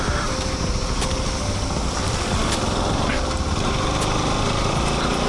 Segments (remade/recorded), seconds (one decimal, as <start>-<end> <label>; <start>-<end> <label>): 0.0-5.3 recorded